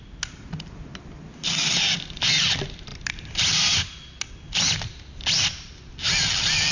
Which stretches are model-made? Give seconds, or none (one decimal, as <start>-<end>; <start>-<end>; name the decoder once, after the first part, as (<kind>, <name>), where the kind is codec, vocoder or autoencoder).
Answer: none